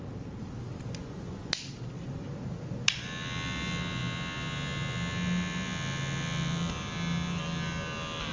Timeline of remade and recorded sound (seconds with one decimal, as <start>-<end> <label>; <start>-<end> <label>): 0.0-1.0 recorded; 1.0-1.5 remade; 1.5-8.3 recorded